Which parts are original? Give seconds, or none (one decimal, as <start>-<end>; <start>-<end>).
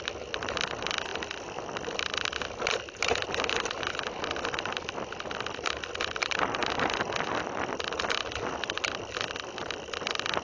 0.0-10.4